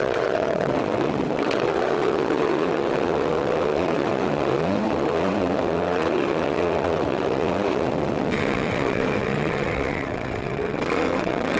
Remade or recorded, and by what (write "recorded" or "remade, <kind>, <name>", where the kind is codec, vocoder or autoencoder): remade, vocoder, WaveNeXt